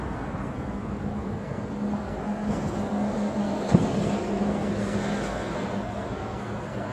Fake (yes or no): yes